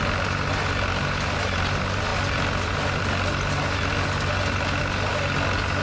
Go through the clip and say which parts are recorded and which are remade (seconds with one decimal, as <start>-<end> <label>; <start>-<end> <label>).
0.0-5.8 recorded